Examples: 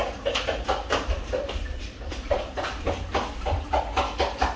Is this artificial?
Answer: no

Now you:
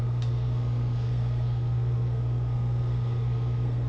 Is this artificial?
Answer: yes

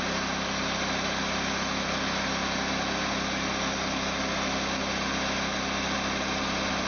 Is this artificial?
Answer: no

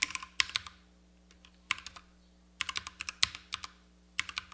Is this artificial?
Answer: no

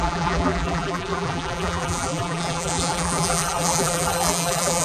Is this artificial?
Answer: yes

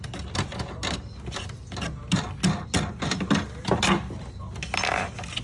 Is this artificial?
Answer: no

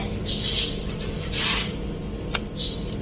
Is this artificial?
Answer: no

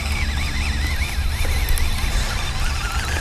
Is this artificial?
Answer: no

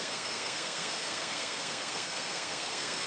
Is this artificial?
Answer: yes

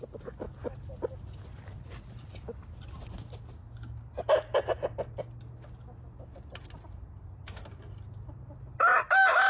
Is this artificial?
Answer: no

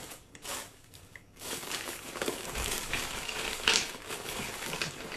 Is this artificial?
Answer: yes